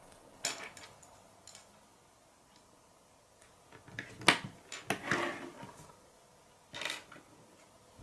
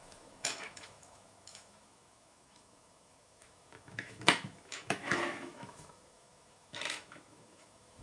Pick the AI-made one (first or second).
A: second